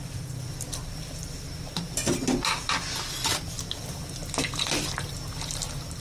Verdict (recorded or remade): recorded